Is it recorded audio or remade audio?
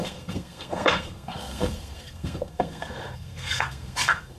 remade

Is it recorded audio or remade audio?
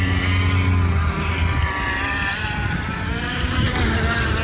recorded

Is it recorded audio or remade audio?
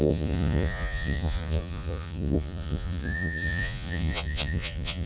remade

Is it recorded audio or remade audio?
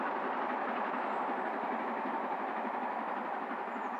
recorded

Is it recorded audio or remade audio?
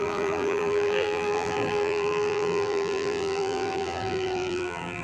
remade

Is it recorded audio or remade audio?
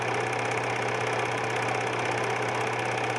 recorded